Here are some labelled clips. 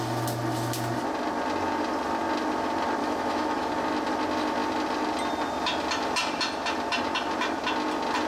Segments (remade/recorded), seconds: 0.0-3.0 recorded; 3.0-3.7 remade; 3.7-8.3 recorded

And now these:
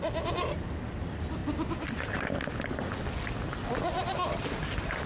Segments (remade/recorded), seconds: 0.0-5.1 recorded

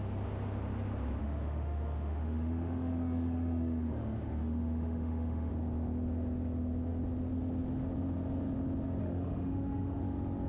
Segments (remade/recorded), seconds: 0.0-1.2 recorded; 1.2-5.5 remade; 5.5-9.0 recorded; 9.0-10.0 remade; 10.0-10.5 recorded

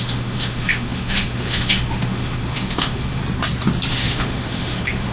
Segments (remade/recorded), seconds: 0.0-3.2 remade; 3.2-3.9 recorded; 3.9-5.1 remade

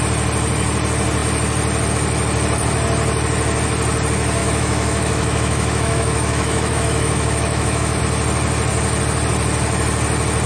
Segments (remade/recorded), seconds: 0.0-4.4 recorded; 4.4-8.0 remade; 8.0-10.5 recorded

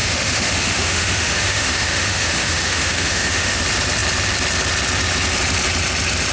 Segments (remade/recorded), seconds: 0.0-3.6 remade; 3.6-6.3 recorded

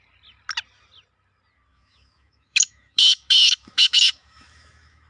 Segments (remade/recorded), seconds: 0.0-1.7 recorded; 1.7-5.1 remade